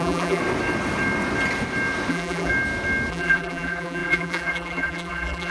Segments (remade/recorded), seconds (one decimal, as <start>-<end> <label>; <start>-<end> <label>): 0.0-0.4 remade; 0.4-2.1 recorded; 2.1-2.5 remade; 2.5-3.1 recorded; 3.1-5.5 remade